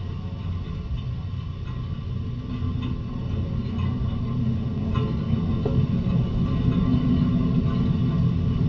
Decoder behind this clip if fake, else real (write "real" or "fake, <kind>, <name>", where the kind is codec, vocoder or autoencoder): real